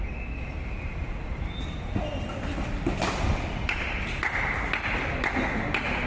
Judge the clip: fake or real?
real